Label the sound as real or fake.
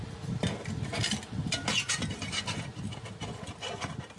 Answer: real